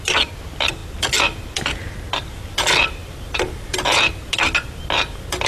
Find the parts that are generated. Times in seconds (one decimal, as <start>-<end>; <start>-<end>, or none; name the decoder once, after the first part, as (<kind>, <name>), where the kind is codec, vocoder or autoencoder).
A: none

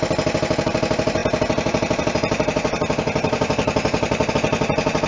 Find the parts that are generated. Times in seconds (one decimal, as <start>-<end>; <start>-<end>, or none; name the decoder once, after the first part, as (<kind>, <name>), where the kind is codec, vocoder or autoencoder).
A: 0.0-5.1 (vocoder, BigVGAN v2)

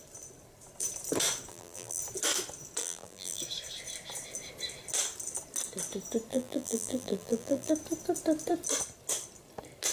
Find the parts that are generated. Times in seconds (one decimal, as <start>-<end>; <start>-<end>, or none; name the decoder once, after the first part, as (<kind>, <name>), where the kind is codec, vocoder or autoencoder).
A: 1.5-2.0 (vocoder, BigVGAN v2); 2.8-3.4; 6.3-7.7

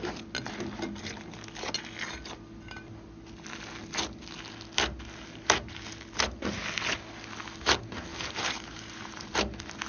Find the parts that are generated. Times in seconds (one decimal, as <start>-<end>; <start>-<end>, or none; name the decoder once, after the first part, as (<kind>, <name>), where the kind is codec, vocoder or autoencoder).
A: 8.1-9.3 (vocoder, BigVGAN v2)

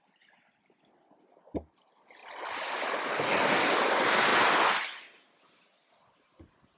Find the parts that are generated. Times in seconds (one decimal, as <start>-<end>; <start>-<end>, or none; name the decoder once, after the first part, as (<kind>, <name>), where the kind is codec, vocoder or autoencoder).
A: none

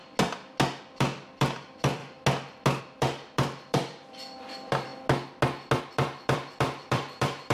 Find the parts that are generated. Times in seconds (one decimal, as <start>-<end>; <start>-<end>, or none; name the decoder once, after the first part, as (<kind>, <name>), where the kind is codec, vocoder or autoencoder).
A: 0.8-2.0 (vocoder, BigVGAN v2); 2.8-4.9; 5.8-7.5